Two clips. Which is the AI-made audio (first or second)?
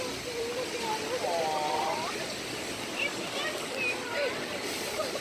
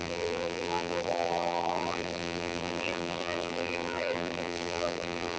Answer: second